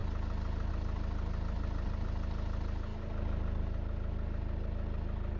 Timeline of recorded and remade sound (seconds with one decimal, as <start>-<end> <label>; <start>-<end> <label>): 0.0-5.4 recorded